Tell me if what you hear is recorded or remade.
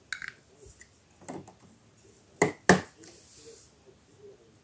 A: recorded